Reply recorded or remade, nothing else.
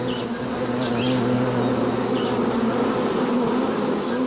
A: recorded